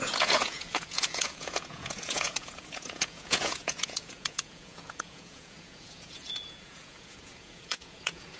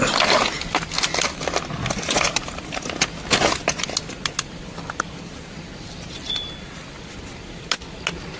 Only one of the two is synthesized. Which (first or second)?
first